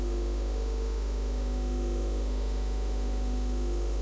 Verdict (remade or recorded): remade